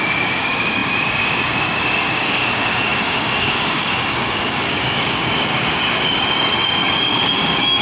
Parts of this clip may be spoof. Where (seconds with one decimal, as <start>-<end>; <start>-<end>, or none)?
0.0-7.8